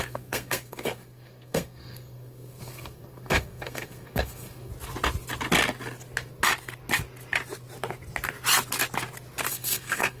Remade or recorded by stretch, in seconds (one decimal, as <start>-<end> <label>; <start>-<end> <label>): 0.0-4.7 remade; 4.7-9.5 recorded; 9.5-10.2 remade